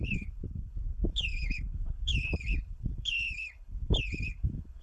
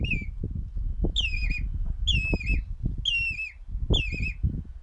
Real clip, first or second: second